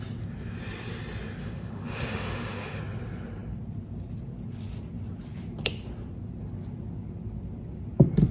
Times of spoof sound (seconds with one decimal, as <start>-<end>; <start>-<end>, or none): 1.4-2.8